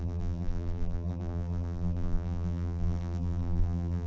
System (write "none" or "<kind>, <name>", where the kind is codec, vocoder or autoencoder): vocoder, BigVGAN v2